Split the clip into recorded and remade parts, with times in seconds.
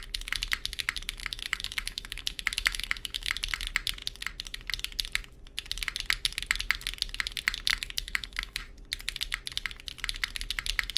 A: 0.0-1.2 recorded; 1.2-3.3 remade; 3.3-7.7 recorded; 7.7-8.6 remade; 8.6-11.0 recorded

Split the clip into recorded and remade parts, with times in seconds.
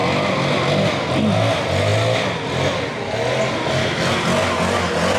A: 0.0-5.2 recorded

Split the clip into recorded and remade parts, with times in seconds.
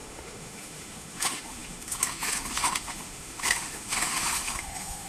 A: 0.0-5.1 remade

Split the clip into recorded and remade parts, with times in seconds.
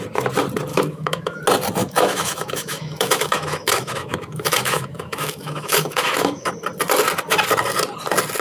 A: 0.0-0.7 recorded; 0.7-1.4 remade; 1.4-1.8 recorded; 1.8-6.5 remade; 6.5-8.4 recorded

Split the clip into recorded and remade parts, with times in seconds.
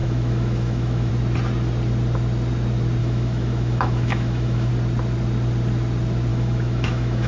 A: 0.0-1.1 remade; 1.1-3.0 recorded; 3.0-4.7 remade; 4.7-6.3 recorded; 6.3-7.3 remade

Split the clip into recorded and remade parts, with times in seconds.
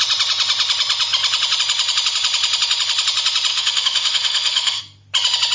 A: 0.0-3.5 recorded; 3.5-4.8 remade; 4.8-5.5 recorded